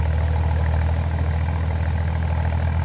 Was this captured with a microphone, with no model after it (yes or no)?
yes